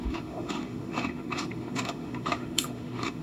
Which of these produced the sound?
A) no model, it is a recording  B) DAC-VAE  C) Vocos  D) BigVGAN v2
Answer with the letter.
B